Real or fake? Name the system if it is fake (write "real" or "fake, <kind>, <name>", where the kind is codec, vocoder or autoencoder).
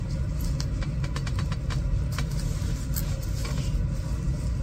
real